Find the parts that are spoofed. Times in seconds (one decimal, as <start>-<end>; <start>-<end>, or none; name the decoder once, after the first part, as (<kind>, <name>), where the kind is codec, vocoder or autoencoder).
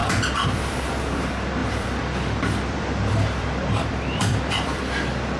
0.0-0.9 (vocoder, BigVGAN v2); 1.6-4.8